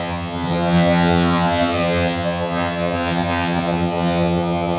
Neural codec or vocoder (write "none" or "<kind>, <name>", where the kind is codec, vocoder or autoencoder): vocoder, HiFi-GAN